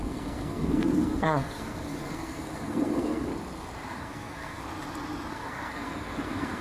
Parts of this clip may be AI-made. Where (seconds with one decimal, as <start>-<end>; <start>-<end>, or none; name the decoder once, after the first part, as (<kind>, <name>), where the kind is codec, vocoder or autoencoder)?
0.0-3.3 (codec, SNAC); 3.9-4.6; 5.3-6.6

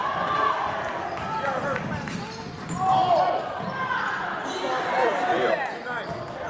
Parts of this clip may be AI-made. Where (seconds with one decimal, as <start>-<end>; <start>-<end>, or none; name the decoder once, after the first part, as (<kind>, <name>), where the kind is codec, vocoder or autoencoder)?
none

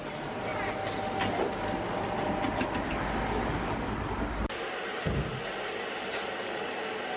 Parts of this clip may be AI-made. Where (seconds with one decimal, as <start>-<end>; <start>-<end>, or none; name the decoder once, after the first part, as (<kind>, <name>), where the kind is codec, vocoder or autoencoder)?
none

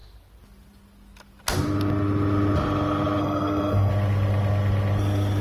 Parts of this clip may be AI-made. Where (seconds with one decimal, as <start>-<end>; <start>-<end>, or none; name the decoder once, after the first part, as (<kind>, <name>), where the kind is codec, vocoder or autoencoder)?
3.2-3.9 (codec, SNAC)

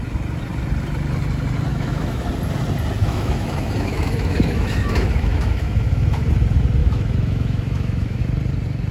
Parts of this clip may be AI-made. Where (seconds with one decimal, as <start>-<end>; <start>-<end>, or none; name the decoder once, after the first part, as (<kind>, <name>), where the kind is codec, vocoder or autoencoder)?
1.7-2.3 (autoencoder, DAC-VAE); 3.0-6.2; 6.8-8.2

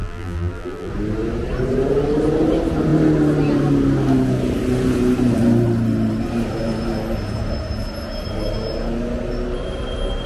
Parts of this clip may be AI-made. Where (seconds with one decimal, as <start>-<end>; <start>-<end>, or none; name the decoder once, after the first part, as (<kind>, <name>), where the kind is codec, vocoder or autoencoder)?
0.0-0.9 (vocoder, BigVGAN v2)

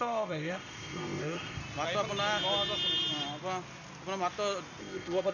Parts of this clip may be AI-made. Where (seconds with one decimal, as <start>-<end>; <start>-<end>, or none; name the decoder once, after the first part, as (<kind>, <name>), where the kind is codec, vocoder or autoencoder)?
0.0-1.6 (codec, ZipCodec); 4.8-5.3